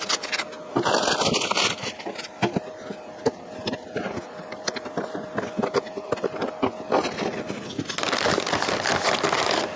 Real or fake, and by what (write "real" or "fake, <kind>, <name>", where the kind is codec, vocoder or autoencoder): real